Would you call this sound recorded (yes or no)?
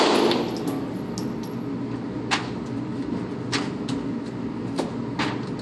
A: yes